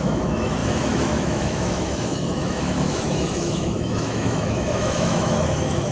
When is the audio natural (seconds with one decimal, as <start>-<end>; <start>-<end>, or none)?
none